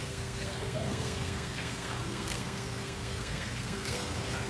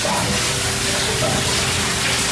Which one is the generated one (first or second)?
first